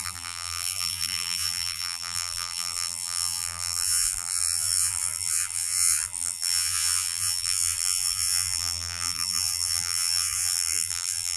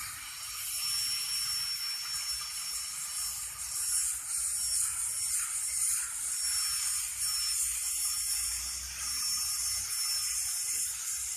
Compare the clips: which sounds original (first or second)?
second